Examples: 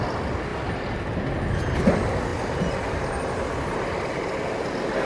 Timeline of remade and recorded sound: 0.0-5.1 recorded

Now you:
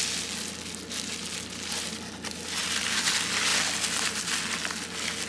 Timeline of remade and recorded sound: 0.0-5.3 recorded

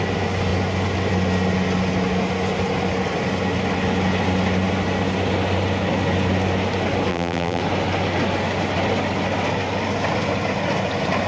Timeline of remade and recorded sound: 0.0-7.1 recorded; 7.1-7.6 remade; 7.6-11.3 recorded

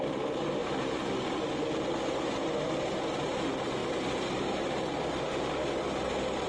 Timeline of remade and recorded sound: 0.0-6.5 recorded

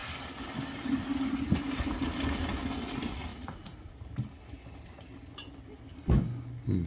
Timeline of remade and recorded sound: 0.0-3.3 recorded; 3.3-3.9 remade; 3.9-6.9 recorded

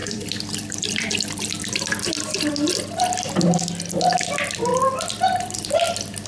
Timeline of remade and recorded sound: 0.0-2.5 remade; 2.5-4.7 recorded; 4.7-5.2 remade; 5.2-6.3 recorded

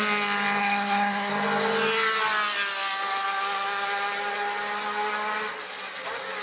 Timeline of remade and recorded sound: 0.0-0.6 recorded; 0.6-1.3 remade; 1.3-6.4 recorded